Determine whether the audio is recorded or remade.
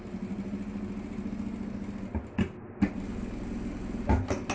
recorded